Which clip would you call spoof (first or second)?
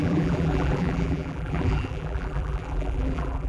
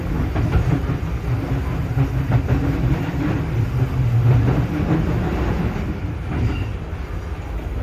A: first